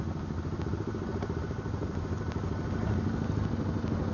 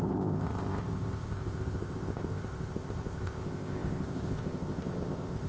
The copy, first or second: second